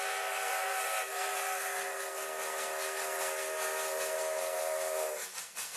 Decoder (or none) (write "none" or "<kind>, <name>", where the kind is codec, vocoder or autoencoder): codec, SNAC